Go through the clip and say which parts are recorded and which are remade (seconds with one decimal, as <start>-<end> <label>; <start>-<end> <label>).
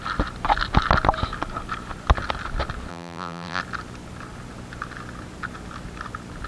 0.0-2.9 recorded; 2.9-3.6 remade; 3.6-6.5 recorded